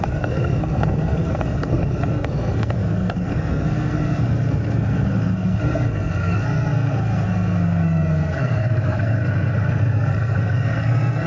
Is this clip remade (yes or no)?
yes